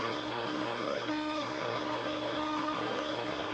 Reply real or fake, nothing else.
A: fake